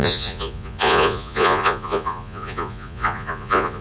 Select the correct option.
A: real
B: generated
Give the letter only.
B